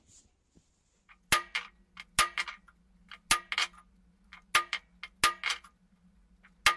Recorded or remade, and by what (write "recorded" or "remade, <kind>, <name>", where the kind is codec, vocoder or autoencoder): recorded